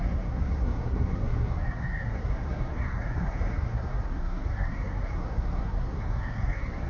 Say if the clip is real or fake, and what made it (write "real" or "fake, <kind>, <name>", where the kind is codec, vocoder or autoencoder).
fake, codec, SNAC